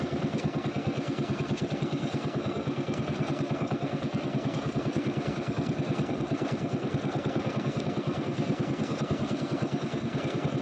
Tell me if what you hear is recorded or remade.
remade